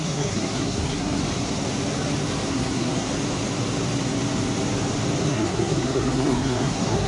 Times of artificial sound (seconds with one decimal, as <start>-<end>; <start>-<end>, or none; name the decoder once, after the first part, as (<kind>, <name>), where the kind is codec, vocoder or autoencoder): 0.0-1.2 (codec, SNAC); 2.5-3.1; 5.2-7.1